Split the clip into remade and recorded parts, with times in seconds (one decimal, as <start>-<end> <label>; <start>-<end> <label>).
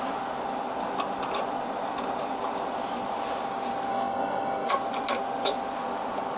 0.0-3.9 recorded; 3.9-4.7 remade; 4.7-6.4 recorded